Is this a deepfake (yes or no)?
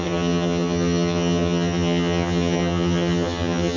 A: yes